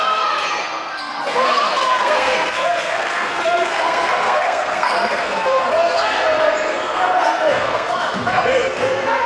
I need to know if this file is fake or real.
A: fake